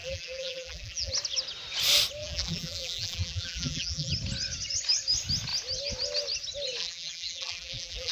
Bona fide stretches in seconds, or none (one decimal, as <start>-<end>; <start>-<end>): 1.1-2.2; 4.1-6.8